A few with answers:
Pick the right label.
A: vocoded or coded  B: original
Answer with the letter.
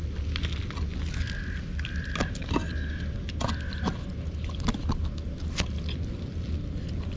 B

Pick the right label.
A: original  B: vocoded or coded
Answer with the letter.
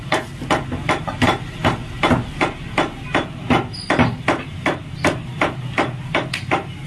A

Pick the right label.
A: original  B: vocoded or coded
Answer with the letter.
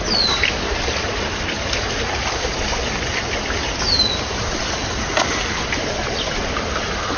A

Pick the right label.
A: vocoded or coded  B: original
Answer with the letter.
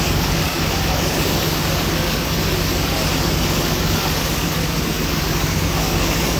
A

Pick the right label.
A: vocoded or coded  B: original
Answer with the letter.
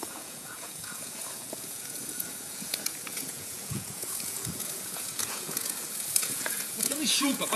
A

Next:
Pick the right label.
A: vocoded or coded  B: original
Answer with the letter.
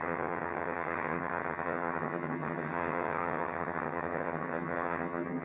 A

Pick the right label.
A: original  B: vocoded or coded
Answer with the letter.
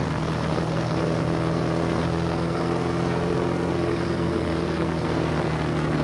B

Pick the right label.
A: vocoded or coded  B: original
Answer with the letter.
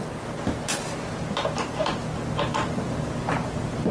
B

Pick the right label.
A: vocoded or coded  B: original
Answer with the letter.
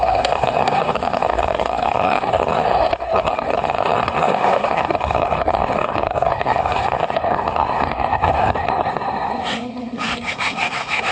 A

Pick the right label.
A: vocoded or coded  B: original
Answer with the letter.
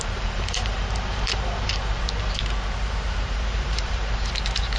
A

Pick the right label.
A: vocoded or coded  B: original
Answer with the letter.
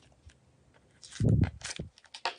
B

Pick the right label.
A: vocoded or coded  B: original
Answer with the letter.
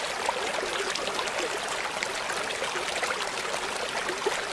B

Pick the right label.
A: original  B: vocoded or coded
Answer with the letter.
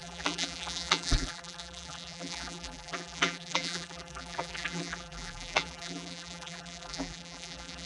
B